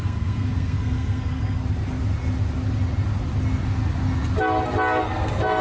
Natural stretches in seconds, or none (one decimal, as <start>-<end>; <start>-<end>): 1.6-5.0